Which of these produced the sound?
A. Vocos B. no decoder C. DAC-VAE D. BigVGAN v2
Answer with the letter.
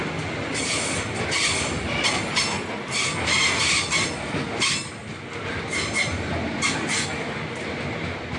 B